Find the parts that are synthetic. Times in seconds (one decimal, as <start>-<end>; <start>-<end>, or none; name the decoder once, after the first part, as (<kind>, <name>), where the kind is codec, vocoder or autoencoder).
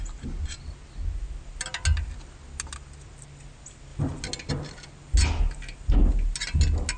none